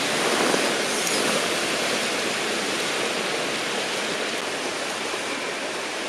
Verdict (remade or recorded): recorded